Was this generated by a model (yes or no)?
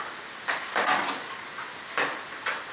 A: no